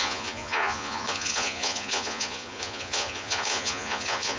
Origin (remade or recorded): remade